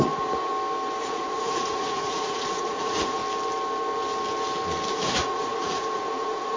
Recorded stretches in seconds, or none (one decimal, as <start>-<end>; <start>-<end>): 0.5-1.0; 3.2-4.9